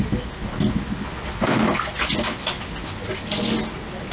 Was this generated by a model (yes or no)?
no